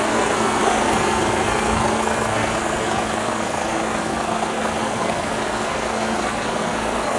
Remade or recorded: remade